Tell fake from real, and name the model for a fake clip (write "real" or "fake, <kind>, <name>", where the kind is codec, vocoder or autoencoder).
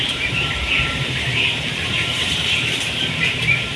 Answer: fake, vocoder, BigVGAN v2